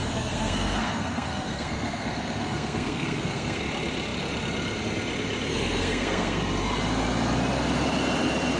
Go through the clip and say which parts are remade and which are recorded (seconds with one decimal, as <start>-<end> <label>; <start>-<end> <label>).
0.0-3.6 remade; 3.6-5.5 recorded; 5.5-6.4 remade; 6.4-8.6 recorded

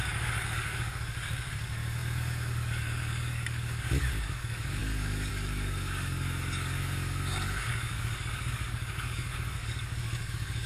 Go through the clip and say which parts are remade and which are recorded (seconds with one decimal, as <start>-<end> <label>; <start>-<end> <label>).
0.0-10.7 remade

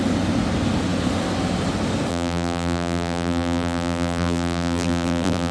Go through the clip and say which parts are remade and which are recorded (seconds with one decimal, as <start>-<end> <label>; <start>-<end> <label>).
0.0-2.1 recorded; 2.1-5.5 remade

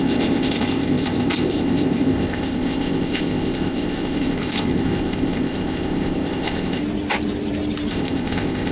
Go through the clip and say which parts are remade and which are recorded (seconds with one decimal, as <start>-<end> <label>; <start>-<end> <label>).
0.0-6.8 remade; 6.8-7.9 recorded; 7.9-8.7 remade